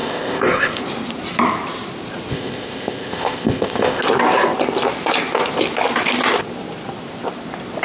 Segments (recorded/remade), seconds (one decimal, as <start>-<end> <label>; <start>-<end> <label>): 0.0-0.8 remade; 0.8-2.3 recorded; 2.3-4.0 remade; 4.0-7.8 recorded